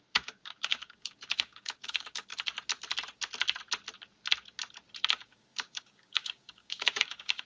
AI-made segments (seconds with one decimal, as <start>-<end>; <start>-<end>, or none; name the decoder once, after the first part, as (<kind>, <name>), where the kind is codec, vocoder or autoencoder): 0.0-2.3 (codec, DAC); 5.2-7.4